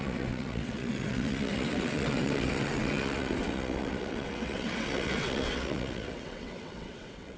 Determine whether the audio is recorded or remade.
remade